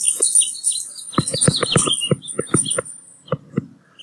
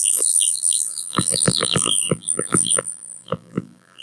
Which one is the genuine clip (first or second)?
first